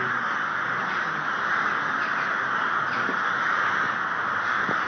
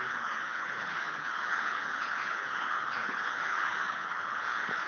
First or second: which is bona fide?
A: first